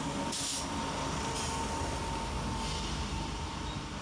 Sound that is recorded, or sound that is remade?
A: recorded